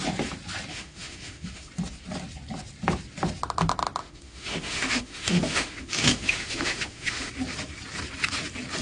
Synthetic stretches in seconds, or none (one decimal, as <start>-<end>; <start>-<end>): 0.7-1.7; 4.0-7.3

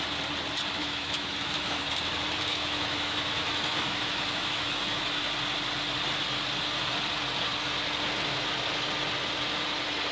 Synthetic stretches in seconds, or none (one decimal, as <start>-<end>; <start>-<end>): 0.8-2.0; 2.5-5.1